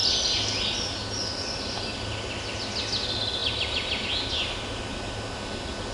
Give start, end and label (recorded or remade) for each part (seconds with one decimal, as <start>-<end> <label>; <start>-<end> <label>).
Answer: 0.0-5.9 recorded